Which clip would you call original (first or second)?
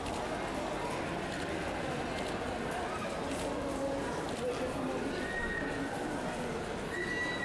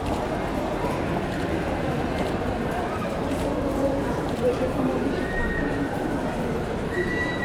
first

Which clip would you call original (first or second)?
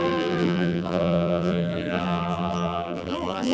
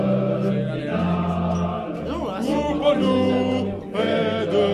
second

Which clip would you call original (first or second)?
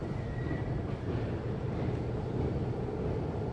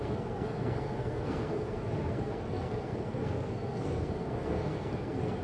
first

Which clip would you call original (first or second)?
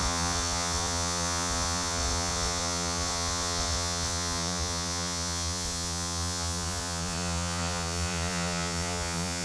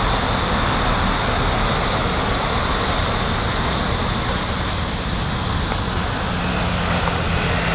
second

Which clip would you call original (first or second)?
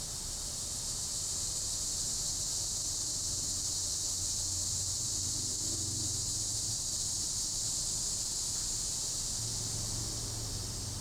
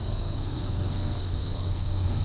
first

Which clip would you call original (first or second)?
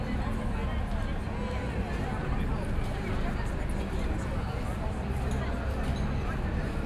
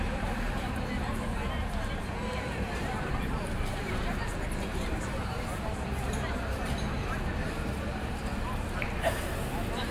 first